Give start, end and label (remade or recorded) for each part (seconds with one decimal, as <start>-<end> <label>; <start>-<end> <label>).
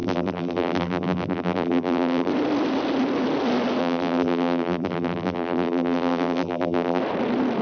0.0-2.3 remade; 2.3-3.8 recorded; 3.8-7.0 remade; 7.0-7.6 recorded